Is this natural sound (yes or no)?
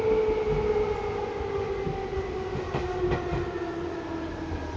yes